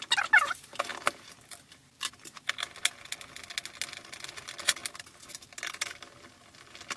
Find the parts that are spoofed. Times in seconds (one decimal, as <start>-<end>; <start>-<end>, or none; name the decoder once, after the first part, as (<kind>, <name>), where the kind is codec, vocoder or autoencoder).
none